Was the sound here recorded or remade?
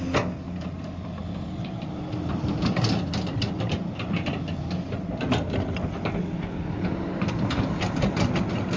recorded